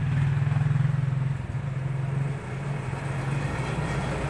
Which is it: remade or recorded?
recorded